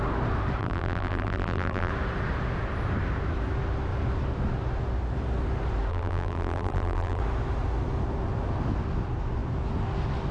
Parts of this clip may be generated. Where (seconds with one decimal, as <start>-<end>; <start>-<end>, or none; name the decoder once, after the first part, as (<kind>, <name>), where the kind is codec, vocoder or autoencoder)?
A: 0.6-1.9 (vocoder, BigVGAN v2); 5.9-7.2